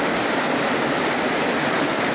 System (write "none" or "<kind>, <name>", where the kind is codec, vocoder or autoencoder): none